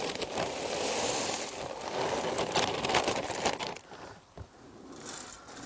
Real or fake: real